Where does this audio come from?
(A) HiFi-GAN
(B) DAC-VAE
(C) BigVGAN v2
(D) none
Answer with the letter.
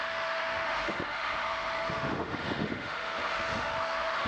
B